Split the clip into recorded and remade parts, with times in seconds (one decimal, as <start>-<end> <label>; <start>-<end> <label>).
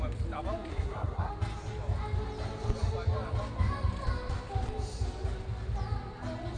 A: 0.0-0.7 recorded; 0.7-1.3 remade; 1.3-6.6 recorded